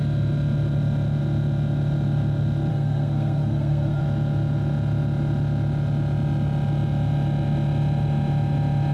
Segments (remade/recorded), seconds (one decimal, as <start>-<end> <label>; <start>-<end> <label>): 0.0-2.7 recorded; 2.7-4.0 remade; 4.0-8.9 recorded